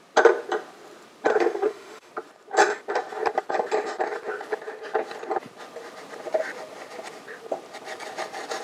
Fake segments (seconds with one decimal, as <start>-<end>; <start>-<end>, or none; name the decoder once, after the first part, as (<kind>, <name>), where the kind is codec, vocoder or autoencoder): 1.3-2.1 (autoencoder, DAC-VAE)